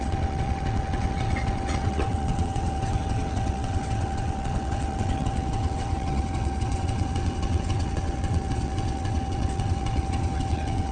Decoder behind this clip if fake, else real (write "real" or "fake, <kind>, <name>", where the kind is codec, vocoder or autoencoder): fake, vocoder, WaveNeXt